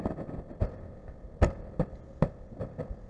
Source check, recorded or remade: recorded